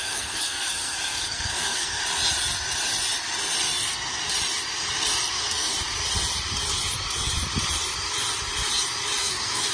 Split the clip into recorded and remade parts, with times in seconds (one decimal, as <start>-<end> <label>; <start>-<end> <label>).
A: 0.0-2.0 remade; 2.0-3.8 recorded; 3.8-4.2 remade; 4.2-5.3 recorded; 5.3-5.7 remade; 5.7-9.2 recorded; 9.2-9.7 remade